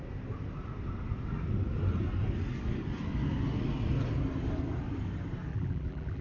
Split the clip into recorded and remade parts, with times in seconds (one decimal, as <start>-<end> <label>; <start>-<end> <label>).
0.0-5.5 recorded; 5.5-6.2 remade